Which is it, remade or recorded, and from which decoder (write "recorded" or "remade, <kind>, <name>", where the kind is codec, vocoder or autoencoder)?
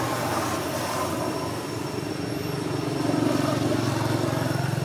recorded